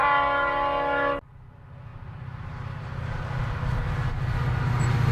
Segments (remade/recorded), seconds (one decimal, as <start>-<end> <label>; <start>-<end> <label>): 0.0-1.9 recorded; 1.9-4.1 remade; 4.1-5.1 recorded